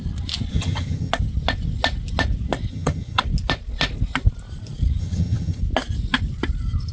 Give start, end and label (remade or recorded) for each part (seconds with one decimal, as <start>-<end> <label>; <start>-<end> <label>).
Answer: 0.0-0.5 recorded; 0.5-1.1 remade; 1.1-2.7 recorded; 2.7-3.2 remade; 3.2-5.0 recorded; 5.0-5.6 remade; 5.6-6.9 recorded